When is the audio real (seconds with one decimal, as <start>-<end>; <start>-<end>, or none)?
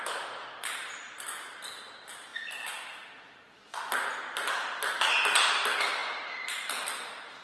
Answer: 0.0-7.4